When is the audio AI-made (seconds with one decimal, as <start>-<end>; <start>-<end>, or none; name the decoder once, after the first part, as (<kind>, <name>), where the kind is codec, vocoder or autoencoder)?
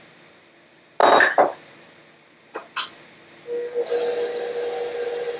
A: none